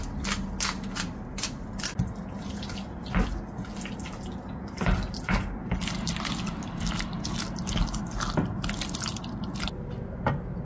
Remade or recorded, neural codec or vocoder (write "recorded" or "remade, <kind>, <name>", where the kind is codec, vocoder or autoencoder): recorded